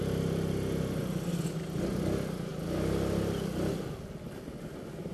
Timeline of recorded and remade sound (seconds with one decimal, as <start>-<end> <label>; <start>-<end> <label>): 0.0-5.1 recorded